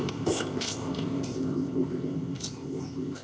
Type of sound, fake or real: fake